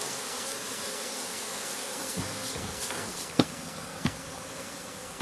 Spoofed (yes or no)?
yes